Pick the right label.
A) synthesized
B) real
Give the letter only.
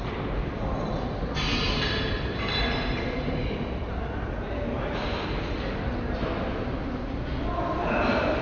B